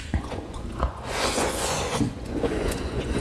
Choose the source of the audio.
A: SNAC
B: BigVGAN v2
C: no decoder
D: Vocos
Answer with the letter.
D